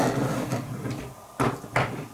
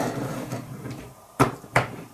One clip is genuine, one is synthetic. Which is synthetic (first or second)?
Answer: second